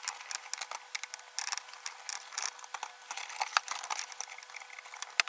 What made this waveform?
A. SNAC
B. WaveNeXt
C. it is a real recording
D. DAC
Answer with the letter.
C